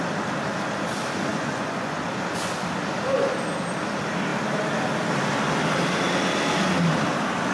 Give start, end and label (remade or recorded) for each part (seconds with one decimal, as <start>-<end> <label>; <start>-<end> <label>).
0.0-1.3 recorded; 1.3-2.0 remade; 2.0-7.5 recorded

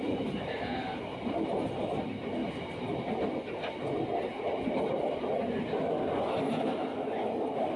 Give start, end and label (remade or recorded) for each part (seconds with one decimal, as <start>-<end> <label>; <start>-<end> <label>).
0.0-7.8 recorded

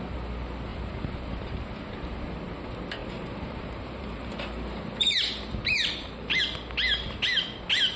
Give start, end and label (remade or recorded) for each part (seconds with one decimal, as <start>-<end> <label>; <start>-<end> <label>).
0.0-0.7 recorded; 0.7-1.3 remade; 1.3-3.0 recorded; 3.0-6.4 remade; 6.4-8.0 recorded

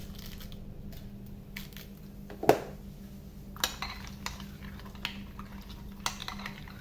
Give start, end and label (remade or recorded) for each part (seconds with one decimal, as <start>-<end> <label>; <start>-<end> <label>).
0.0-6.8 recorded

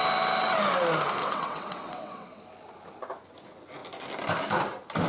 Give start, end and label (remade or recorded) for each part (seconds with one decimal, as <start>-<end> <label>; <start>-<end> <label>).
0.0-1.2 recorded; 1.2-2.4 remade; 2.4-5.1 recorded